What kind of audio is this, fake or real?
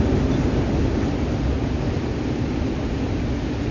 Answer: real